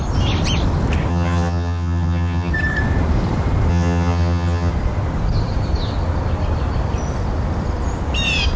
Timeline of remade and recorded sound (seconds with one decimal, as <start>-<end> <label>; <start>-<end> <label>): 0.0-1.1 recorded; 1.1-2.5 remade; 2.5-3.7 recorded; 3.7-4.7 remade; 4.7-8.6 recorded